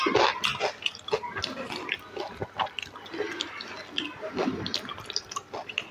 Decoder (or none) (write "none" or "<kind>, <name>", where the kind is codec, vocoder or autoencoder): none